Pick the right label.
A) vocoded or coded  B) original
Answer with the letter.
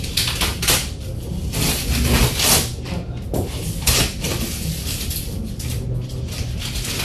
B